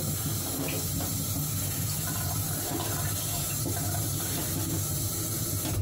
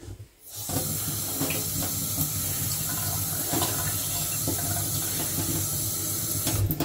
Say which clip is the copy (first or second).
first